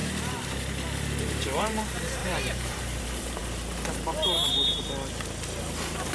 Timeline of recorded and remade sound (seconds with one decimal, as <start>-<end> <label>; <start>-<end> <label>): 0.0-1.6 recorded; 1.6-3.4 remade; 3.4-5.6 recorded; 5.6-6.1 remade